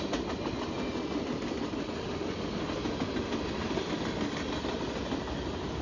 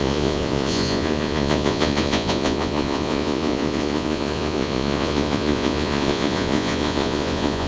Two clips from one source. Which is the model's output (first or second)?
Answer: second